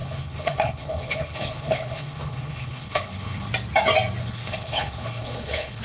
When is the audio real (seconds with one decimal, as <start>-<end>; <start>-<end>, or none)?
3.5-4.2